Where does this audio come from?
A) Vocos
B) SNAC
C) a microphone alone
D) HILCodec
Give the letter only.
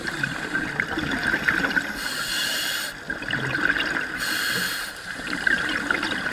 C